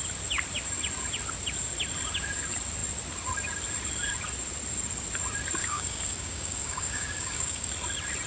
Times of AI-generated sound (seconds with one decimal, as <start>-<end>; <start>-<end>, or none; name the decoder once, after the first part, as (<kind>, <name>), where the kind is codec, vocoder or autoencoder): 5.6-7.7 (codec, DAC)